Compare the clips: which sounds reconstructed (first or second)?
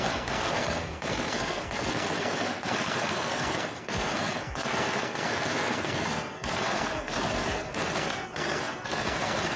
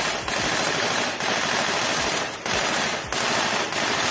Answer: first